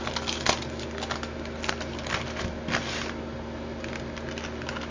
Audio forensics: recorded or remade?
recorded